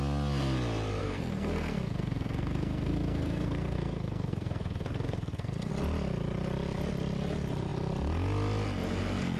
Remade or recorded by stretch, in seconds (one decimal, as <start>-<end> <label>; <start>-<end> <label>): 0.0-1.0 recorded; 1.0-5.7 remade; 5.7-9.4 recorded